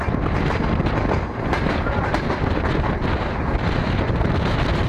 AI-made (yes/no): no